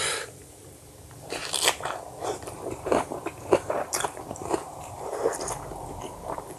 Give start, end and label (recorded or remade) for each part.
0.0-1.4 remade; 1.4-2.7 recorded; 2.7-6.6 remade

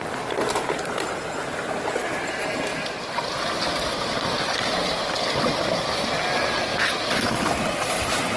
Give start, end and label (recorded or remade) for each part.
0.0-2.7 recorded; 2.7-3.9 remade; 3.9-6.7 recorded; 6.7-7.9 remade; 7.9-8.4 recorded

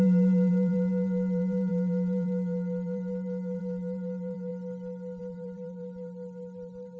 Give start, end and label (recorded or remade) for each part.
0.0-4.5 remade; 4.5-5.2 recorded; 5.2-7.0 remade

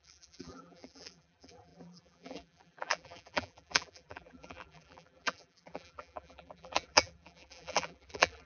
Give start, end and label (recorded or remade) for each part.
0.0-8.5 remade

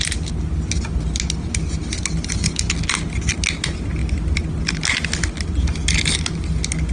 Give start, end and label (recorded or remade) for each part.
0.0-4.0 recorded; 4.0-4.6 remade; 4.6-6.9 recorded